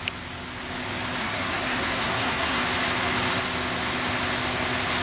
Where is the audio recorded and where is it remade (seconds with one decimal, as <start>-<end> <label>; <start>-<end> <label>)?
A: 0.0-1.2 recorded; 1.2-2.6 remade; 2.6-5.0 recorded